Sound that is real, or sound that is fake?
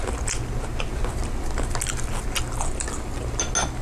real